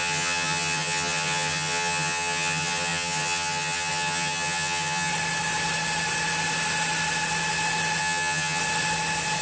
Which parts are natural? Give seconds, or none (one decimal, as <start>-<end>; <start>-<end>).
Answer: 5.1-8.0; 8.6-9.4